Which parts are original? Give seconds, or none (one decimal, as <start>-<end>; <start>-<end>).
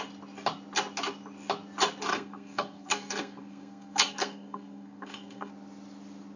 0.0-2.1; 5.5-6.4